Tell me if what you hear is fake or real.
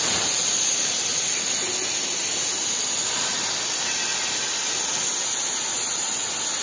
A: real